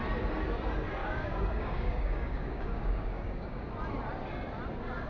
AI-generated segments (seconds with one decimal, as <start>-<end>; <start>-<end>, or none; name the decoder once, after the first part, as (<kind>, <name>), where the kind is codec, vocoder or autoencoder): 1.0-3.7 (codec, DAC)